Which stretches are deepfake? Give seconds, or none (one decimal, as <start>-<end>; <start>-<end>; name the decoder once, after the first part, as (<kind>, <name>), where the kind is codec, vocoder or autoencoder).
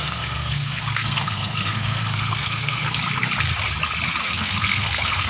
0.0-3.0 (codec, SNAC); 4.2-5.3